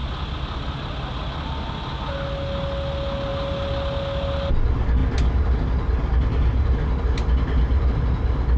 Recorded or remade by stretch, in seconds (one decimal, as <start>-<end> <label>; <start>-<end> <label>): 0.0-8.6 recorded